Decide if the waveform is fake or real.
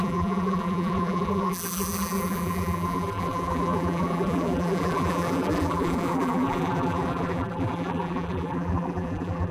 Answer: fake